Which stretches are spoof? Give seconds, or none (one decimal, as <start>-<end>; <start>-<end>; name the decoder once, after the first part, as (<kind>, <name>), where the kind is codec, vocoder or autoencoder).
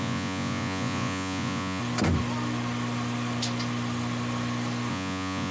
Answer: 0.0-1.8 (vocoder, Vocos); 4.9-5.5